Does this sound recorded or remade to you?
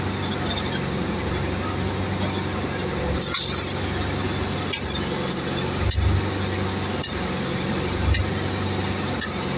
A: recorded